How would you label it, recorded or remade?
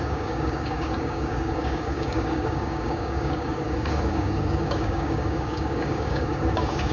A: remade